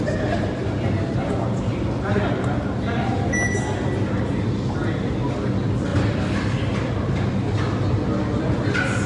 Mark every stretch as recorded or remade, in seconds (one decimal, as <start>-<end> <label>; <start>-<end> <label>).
0.0-5.9 recorded; 5.9-6.9 remade; 6.9-9.1 recorded